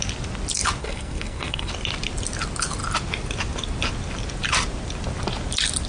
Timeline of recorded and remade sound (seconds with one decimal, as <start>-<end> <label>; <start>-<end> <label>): 0.0-0.8 recorded; 0.8-1.7 remade; 1.7-5.9 recorded